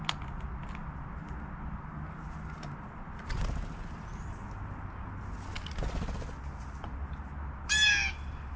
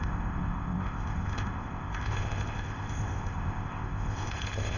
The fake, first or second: second